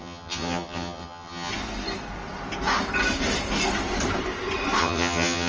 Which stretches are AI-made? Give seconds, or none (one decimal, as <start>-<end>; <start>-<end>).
0.0-1.5; 4.8-5.5